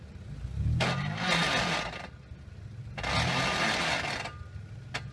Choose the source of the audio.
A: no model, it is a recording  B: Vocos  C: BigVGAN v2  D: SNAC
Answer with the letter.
A